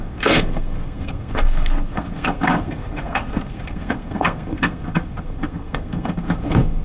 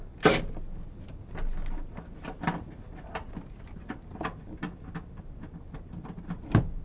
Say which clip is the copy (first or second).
first